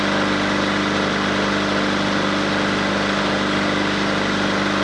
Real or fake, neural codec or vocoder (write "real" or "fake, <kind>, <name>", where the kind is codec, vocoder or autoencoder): real